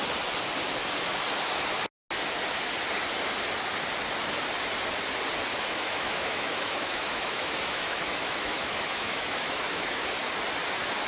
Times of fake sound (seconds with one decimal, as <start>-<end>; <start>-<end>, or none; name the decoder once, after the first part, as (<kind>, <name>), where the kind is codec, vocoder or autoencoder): 5.5-10.1 (autoencoder, DAC-VAE)